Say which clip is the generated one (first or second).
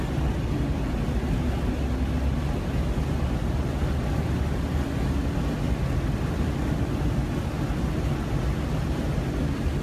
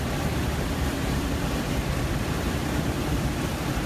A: second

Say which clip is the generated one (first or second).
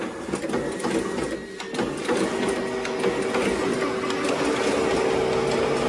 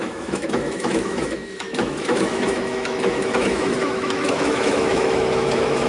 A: second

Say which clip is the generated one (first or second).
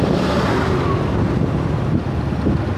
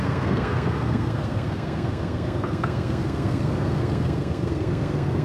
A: second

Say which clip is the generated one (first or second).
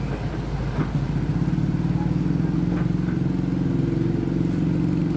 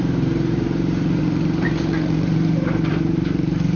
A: second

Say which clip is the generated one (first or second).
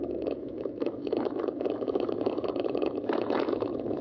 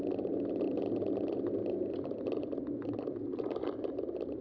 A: first